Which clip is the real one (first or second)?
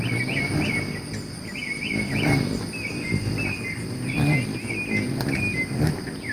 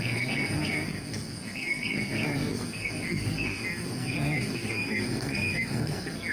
first